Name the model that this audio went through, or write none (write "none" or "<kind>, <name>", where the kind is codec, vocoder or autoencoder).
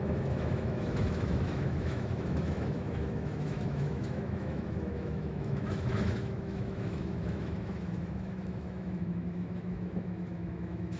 autoencoder, DAC-VAE